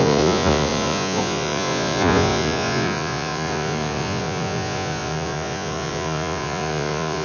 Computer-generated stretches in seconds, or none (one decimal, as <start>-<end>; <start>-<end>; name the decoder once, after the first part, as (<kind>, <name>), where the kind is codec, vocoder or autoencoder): 0.0-7.2 (vocoder, Vocos)